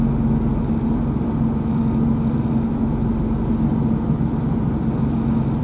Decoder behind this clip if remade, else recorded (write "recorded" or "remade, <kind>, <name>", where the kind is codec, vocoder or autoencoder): recorded